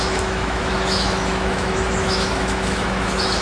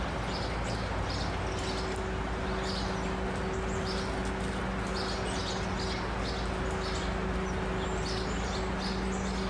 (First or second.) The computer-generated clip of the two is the first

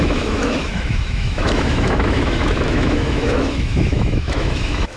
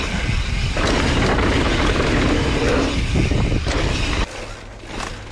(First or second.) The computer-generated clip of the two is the first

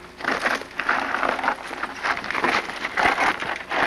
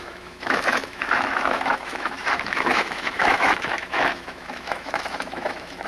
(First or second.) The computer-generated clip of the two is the second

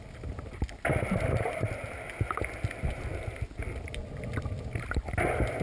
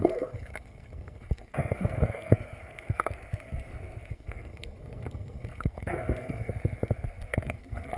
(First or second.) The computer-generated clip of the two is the second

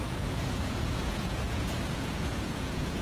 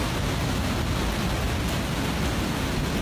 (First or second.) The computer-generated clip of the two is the first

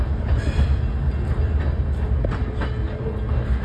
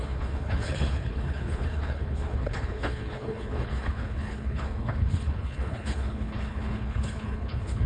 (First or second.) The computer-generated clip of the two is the second